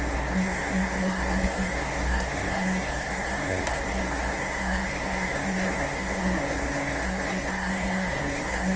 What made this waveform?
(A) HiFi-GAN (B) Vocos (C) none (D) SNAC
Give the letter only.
D